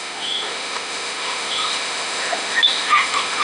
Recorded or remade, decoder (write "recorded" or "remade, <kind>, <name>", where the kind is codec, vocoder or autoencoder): remade, autoencoder, DAC-VAE